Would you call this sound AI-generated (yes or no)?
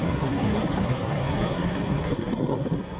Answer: yes